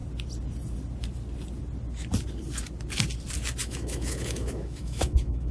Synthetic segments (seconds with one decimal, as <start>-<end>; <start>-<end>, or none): 3.6-5.5